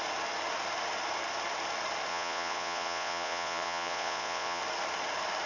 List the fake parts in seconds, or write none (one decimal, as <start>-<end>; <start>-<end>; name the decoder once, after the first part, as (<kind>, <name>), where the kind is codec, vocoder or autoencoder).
2.1-4.6 (vocoder, Vocos)